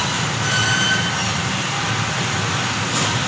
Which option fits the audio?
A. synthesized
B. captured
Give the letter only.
B